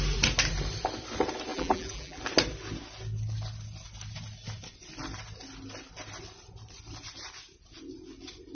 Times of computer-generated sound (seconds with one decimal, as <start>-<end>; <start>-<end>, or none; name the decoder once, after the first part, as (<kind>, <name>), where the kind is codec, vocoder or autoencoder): 1.5-2.2 (vocoder, BigVGAN v2)